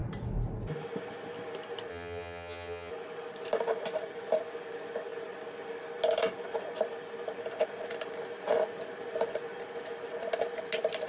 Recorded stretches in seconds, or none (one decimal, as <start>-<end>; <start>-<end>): 0.0-1.9; 2.9-11.1